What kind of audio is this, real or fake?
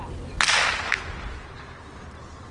real